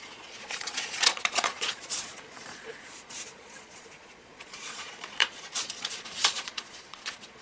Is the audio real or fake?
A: fake